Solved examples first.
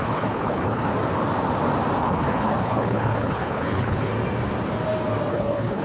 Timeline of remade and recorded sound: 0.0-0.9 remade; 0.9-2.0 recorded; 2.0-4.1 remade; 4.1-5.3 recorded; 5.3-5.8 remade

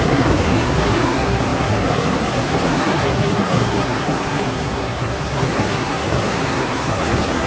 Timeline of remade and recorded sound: 0.0-7.5 remade

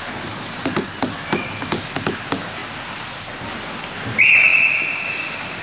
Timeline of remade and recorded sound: 0.0-2.6 recorded; 2.6-3.9 remade; 3.9-5.6 recorded

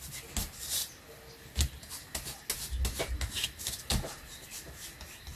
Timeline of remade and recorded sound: 0.0-5.4 recorded

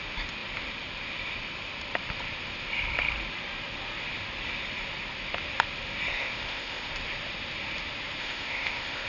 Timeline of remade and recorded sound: 0.0-6.1 recorded; 6.1-6.9 remade; 6.9-8.2 recorded; 8.2-9.1 remade